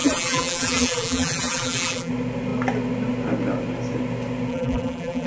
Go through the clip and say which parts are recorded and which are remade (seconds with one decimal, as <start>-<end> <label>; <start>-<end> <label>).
0.0-2.1 remade; 2.1-4.5 recorded; 4.5-5.3 remade